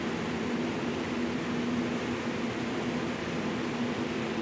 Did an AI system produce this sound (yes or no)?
no